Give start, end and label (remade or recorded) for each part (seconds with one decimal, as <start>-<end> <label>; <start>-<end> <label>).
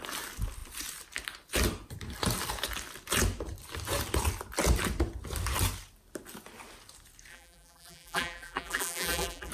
0.0-7.3 recorded; 7.3-9.5 remade